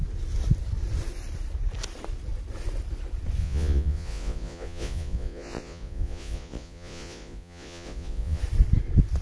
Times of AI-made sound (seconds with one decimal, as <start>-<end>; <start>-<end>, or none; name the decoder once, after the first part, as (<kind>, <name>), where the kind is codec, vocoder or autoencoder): 3.4-8.4 (vocoder, Vocos)